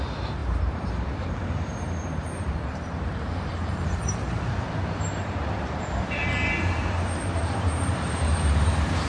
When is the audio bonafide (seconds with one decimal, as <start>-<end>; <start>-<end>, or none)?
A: none